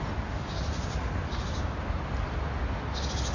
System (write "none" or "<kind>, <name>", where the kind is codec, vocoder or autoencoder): none